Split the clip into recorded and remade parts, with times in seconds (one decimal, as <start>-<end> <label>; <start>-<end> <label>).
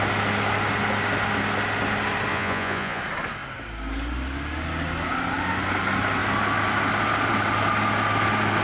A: 0.0-2.3 recorded; 2.3-3.0 remade; 3.0-8.6 recorded